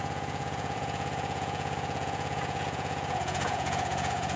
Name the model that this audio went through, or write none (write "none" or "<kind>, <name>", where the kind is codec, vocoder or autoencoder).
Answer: vocoder, Vocos